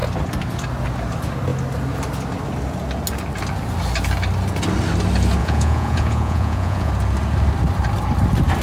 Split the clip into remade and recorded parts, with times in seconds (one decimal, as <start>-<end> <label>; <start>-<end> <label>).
0.0-5.4 recorded; 5.4-6.9 remade; 6.9-8.6 recorded